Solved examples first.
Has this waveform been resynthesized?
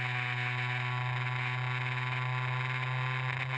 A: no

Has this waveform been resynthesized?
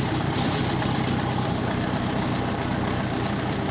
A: no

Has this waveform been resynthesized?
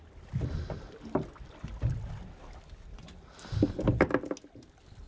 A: no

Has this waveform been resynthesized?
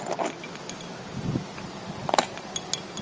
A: no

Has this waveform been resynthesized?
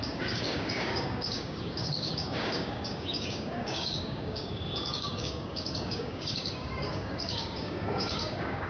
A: yes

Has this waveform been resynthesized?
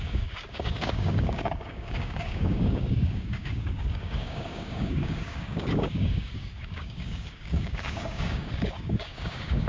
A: yes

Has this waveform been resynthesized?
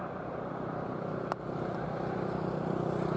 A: no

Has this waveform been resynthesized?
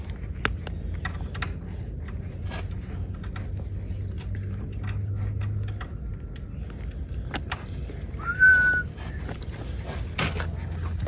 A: no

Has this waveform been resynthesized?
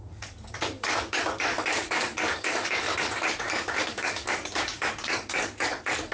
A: yes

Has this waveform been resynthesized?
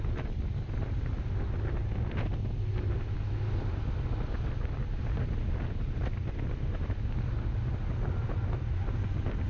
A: no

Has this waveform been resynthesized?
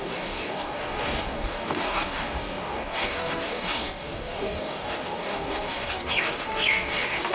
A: yes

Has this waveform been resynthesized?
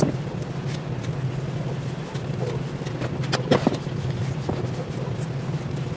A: no